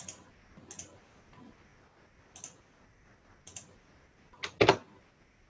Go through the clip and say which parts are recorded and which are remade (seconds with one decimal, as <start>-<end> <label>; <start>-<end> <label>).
0.0-5.5 recorded